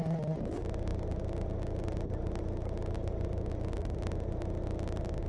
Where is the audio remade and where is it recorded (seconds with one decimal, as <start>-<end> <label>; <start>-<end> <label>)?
0.0-5.3 recorded